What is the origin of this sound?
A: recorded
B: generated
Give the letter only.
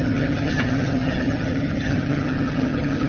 B